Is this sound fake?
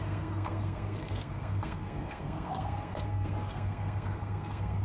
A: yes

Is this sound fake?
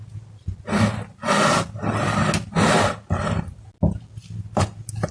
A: no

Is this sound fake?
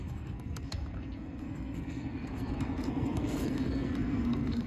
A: yes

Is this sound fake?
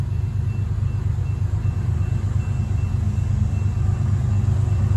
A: no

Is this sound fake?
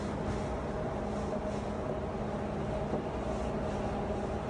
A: no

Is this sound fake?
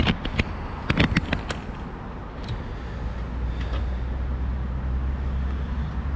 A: no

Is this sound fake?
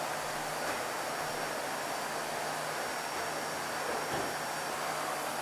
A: no